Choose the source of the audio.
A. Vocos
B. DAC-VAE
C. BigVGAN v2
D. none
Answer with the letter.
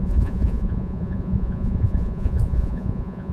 A